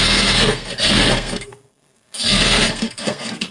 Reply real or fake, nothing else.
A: fake